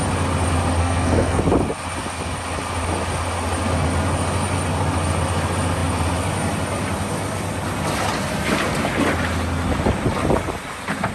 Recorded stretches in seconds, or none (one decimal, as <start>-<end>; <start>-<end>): 0.0-0.8; 1.4-11.1